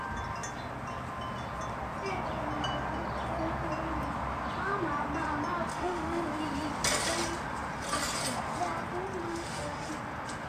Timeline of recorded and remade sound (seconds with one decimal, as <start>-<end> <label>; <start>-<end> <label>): 0.0-5.7 recorded; 5.7-6.2 remade; 6.2-9.3 recorded; 9.3-9.9 remade; 9.9-10.5 recorded